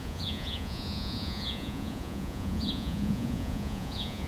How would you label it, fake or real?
fake